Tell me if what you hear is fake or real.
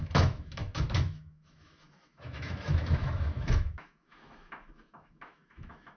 fake